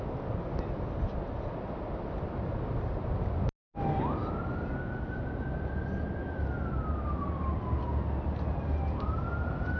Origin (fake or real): real